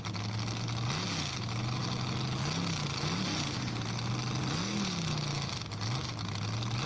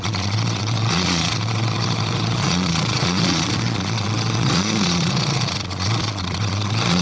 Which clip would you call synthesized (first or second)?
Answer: second